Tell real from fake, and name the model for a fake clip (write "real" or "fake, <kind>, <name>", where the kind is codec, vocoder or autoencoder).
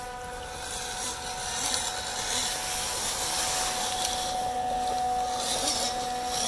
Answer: real